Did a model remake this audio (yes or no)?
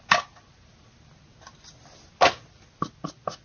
no